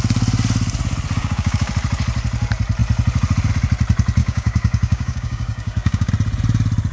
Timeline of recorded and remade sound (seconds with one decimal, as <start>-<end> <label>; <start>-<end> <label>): 0.0-1.2 recorded; 1.2-1.7 remade; 1.7-4.2 recorded; 4.2-6.1 remade; 6.1-6.9 recorded